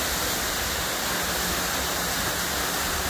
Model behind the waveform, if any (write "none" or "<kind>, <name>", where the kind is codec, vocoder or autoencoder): none